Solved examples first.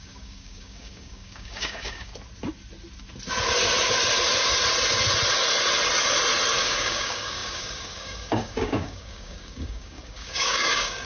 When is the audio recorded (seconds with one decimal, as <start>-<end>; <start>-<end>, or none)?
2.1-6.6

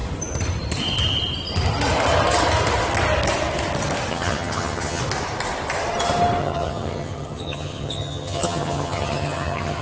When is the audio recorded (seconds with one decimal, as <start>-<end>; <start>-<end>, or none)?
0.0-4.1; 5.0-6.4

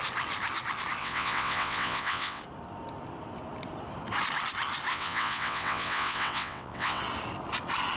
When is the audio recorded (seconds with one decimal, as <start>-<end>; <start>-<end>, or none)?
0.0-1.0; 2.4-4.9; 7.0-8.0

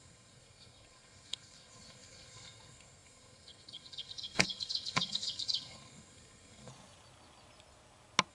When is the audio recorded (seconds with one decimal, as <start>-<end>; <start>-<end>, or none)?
6.7-8.3